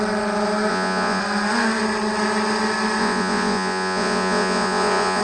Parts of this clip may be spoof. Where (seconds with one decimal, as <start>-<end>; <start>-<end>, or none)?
0.7-1.2; 3.0-5.2